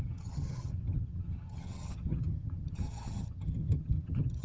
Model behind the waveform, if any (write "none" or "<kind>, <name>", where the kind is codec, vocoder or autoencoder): vocoder, HiFi-GAN